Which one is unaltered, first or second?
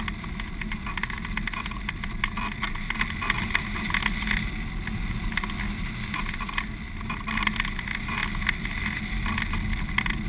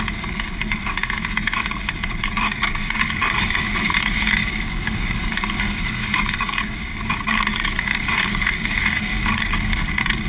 first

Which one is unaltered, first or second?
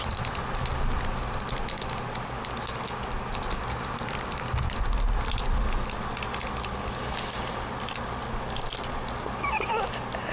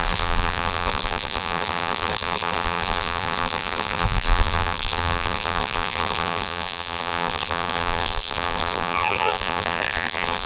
first